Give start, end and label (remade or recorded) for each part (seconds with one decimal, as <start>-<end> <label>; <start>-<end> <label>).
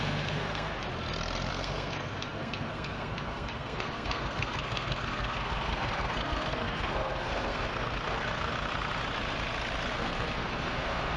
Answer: 0.0-0.8 remade; 0.8-1.5 recorded; 1.5-8.5 remade; 8.5-9.9 recorded; 9.9-11.2 remade